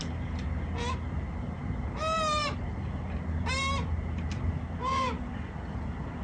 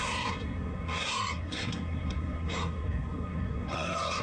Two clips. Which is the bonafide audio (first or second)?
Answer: first